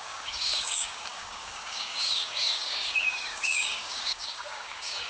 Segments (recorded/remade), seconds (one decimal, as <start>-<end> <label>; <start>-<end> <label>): 0.0-5.1 remade